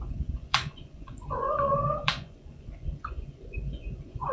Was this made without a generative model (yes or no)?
no